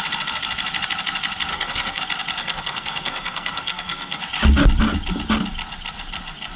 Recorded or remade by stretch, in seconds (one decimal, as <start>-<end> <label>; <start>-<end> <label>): 0.0-1.5 recorded; 1.5-2.0 remade; 2.0-2.4 recorded; 2.4-4.2 remade; 4.2-6.6 recorded